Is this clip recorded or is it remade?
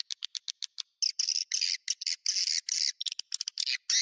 recorded